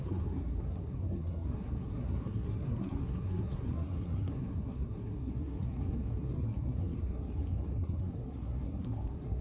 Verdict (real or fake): fake